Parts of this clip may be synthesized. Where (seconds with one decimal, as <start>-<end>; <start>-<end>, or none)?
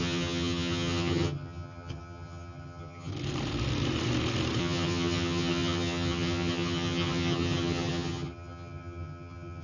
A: 0.0-3.1; 4.6-9.6